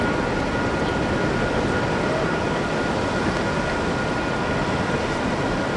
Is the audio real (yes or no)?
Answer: yes